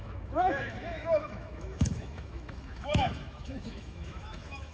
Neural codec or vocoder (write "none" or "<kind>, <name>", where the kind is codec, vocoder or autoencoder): autoencoder, DAC-VAE